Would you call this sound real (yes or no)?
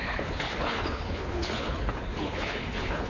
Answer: no